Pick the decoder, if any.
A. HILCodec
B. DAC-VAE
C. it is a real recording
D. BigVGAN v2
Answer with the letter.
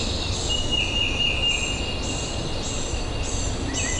C